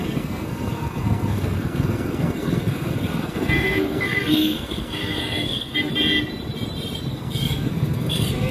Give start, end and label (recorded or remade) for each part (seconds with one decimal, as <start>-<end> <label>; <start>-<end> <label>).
0.0-5.9 remade; 5.9-7.1 recorded; 7.1-8.5 remade